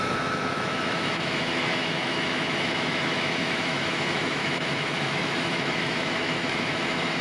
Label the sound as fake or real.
fake